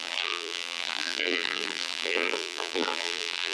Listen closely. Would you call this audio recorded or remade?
remade